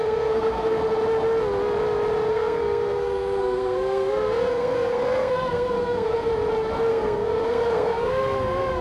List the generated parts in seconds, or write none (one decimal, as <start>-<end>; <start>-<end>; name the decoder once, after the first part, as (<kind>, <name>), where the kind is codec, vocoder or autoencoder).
0.0-0.8 (codec, SNAC); 2.3-6.3; 6.9-8.8